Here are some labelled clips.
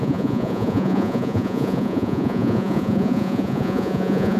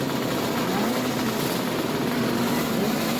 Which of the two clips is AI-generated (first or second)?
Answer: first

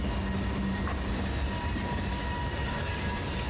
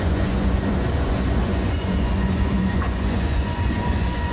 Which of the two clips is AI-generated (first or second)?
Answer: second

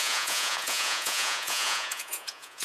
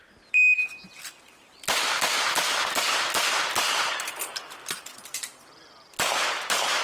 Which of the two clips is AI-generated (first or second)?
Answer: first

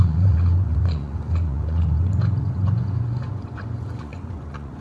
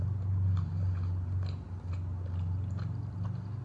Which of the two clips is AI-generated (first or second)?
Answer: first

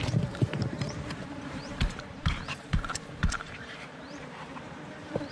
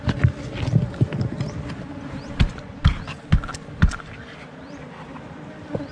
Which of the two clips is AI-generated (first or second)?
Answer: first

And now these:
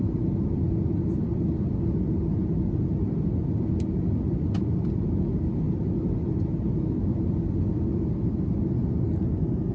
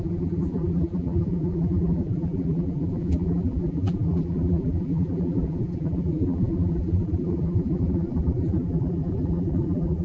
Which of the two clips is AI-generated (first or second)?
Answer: second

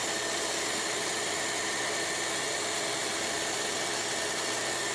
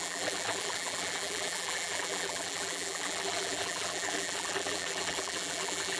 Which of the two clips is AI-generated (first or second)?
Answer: second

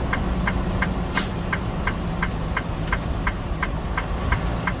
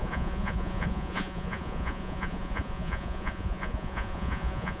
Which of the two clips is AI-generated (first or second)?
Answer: second